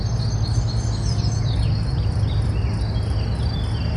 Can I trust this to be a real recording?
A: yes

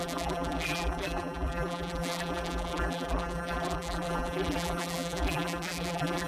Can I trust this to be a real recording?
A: no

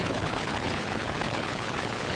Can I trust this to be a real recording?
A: no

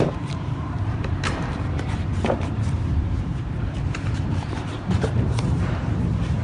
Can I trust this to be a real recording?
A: no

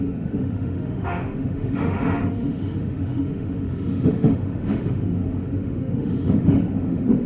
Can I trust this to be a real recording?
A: no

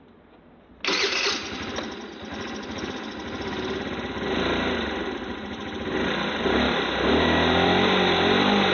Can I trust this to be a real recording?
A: yes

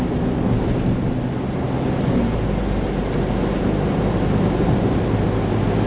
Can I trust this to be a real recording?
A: yes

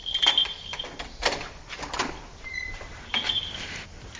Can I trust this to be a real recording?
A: yes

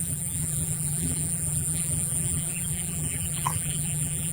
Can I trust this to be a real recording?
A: no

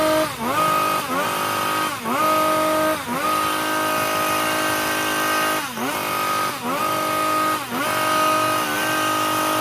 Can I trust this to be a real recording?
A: yes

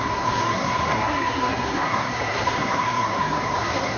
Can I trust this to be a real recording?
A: no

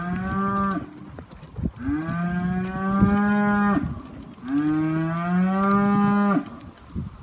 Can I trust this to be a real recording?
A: yes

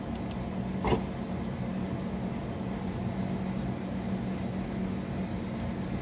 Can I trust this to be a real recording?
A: yes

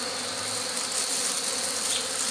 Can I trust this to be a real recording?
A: yes